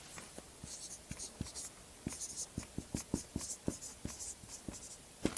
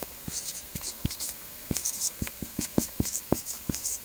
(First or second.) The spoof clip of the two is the second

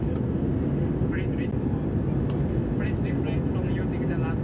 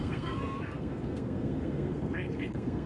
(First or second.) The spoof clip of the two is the second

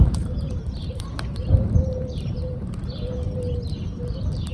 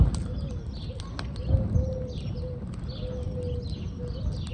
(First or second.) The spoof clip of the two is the first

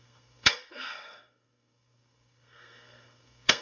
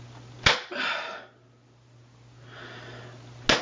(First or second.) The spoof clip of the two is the first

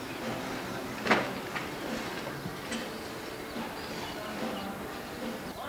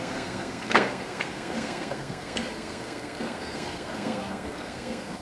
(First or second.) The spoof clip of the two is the second